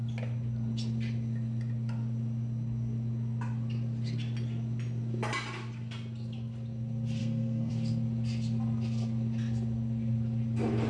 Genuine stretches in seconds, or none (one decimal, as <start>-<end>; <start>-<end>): 0.0-7.2; 7.7-10.9